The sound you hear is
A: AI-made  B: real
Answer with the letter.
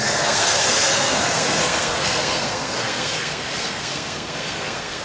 A